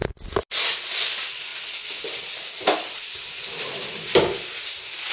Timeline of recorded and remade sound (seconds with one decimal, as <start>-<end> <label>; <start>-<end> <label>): 0.0-5.1 recorded